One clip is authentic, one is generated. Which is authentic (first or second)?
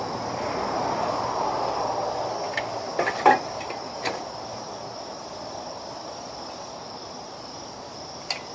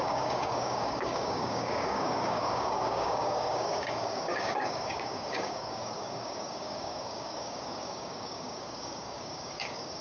first